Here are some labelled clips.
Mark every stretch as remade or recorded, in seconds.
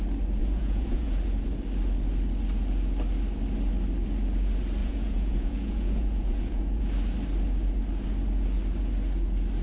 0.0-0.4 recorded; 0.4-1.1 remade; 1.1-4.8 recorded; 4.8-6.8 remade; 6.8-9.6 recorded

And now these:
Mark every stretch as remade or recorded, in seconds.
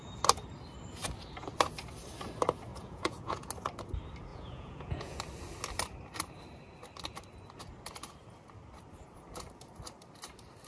0.0-2.7 recorded; 2.7-3.5 remade; 3.5-4.3 recorded; 4.3-5.2 remade; 5.2-10.7 recorded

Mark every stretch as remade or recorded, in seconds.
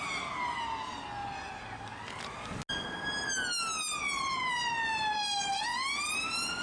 0.0-6.6 recorded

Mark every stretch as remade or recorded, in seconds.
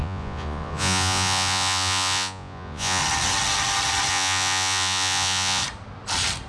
0.0-3.0 remade; 3.0-4.1 recorded; 4.1-5.6 remade; 5.6-6.5 recorded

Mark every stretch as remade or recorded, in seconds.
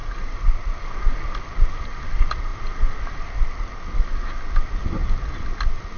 0.0-6.0 recorded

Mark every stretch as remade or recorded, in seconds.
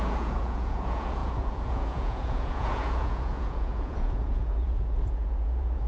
0.0-5.9 remade